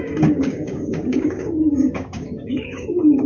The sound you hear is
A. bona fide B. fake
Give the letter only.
B